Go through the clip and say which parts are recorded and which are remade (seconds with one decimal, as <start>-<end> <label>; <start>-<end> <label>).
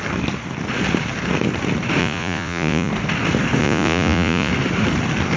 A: 0.0-2.0 recorded; 2.0-2.9 remade; 2.9-3.6 recorded; 3.6-4.5 remade; 4.5-5.4 recorded